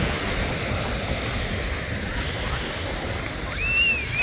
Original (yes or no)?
yes